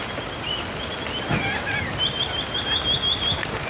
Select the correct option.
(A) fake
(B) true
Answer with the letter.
B